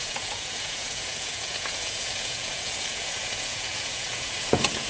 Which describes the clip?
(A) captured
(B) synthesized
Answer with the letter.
B